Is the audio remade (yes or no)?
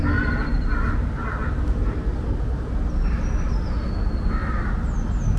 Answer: no